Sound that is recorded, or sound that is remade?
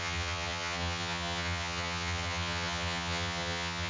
remade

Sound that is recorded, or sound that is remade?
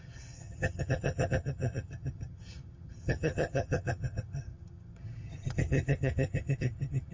remade